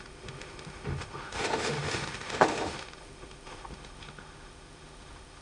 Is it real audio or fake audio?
fake